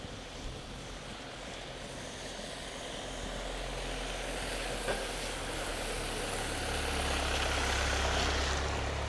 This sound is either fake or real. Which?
real